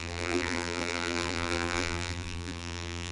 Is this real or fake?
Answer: fake